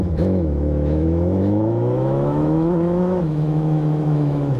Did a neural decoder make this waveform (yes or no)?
yes